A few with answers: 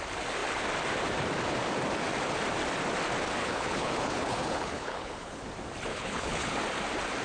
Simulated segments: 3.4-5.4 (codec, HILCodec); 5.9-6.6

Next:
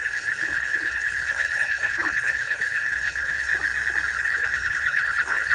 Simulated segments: 0.0-3.5 (codec, HILCodec); 4.2-5.5

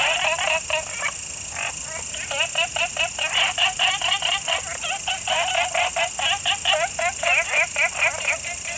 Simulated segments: none

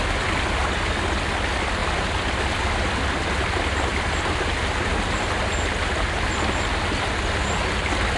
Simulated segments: none

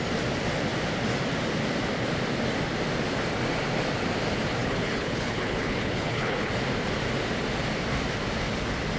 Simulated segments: 4.6-6.5 (codec, HILCodec)

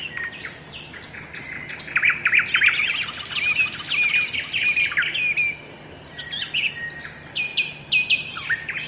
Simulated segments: none

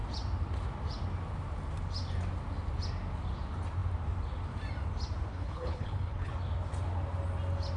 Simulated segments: 5.3-6.3 (codec, HILCodec)